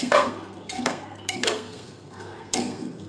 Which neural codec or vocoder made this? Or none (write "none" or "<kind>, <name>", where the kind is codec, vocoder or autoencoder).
codec, SNAC